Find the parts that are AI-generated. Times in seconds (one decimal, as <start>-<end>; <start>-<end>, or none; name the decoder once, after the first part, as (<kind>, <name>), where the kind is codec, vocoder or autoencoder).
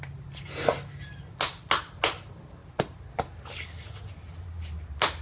none